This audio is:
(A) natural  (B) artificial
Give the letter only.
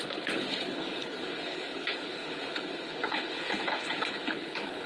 B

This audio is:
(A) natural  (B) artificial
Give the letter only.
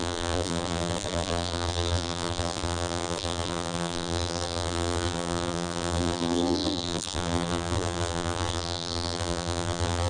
B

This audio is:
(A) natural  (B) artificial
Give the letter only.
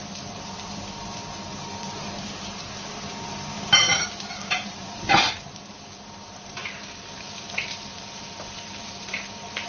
B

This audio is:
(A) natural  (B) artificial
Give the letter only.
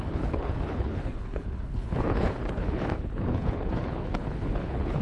B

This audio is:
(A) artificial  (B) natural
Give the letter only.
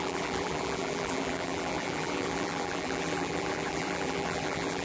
A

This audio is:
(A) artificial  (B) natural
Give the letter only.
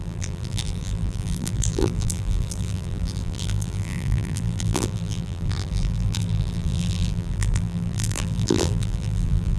A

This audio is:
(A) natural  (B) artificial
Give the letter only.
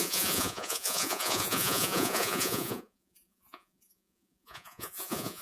B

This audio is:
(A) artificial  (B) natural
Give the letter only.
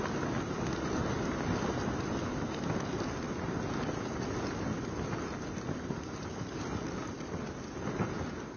B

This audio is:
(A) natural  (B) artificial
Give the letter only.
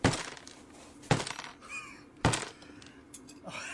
A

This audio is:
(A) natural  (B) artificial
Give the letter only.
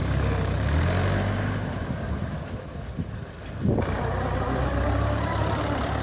A